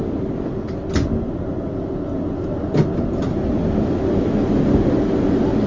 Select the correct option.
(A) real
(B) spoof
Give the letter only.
A